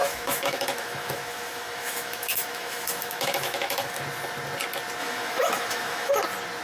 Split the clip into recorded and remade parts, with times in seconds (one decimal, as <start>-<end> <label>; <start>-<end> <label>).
0.0-4.0 remade; 4.0-5.0 recorded; 5.0-6.1 remade; 6.1-6.6 recorded